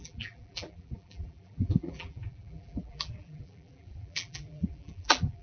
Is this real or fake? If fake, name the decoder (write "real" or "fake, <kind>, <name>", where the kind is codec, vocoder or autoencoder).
fake, vocoder, BigVGAN v2